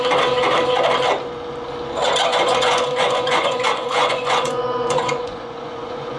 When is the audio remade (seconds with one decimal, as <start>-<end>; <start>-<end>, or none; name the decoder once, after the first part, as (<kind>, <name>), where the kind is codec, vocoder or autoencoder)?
2.3-6.2 (vocoder, Vocos)